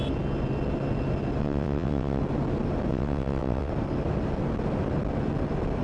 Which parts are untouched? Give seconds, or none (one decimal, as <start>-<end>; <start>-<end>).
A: 0.0-1.4; 2.2-2.9; 3.7-5.8